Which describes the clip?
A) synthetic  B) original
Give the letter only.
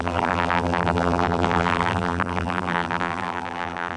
A